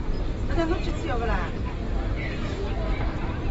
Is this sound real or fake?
real